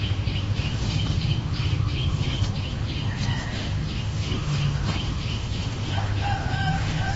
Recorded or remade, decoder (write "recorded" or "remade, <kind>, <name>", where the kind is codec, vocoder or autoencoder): remade, autoencoder, DAC-VAE